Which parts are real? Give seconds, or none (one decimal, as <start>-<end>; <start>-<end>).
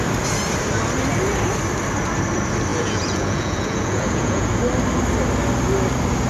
0.0-2.7; 4.5-6.3